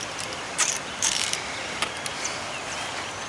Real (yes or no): no